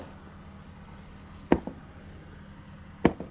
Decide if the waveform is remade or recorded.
recorded